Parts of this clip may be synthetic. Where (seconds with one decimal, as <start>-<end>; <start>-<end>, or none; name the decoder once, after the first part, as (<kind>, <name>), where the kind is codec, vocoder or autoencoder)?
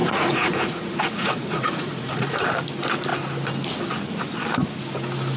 0.0-2.5 (vocoder, Vocos)